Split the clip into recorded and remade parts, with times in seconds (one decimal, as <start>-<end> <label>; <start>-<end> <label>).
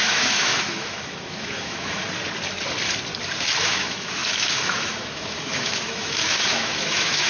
0.0-2.0 remade; 2.0-3.6 recorded; 3.6-7.3 remade